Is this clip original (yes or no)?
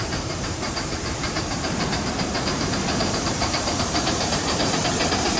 no